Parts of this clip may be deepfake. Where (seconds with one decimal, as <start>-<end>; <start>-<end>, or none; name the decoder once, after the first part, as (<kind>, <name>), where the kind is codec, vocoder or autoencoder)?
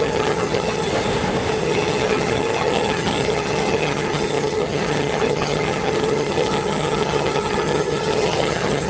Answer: 0.0-0.9 (vocoder, HiFi-GAN); 1.6-8.9